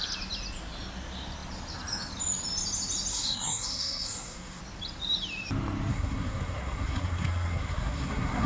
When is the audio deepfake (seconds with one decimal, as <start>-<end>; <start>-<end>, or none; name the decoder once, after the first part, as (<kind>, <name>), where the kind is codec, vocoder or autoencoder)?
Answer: 3.1-4.6 (codec, SNAC); 5.9-8.5

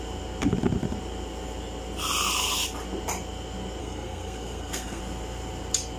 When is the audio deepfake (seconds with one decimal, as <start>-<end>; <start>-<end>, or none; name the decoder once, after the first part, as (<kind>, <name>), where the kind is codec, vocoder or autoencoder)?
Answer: 3.8-5.0 (codec, SNAC)